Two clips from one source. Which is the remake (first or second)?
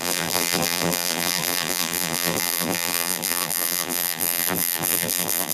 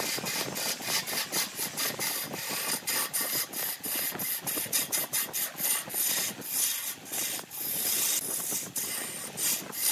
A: first